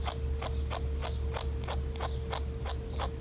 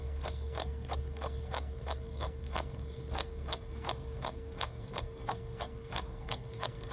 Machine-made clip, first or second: second